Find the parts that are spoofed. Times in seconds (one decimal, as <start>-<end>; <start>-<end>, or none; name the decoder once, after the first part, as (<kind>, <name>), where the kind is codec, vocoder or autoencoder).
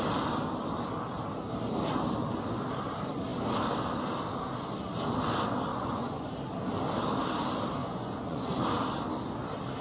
5.7-6.3 (vocoder, Vocos); 7.8-8.6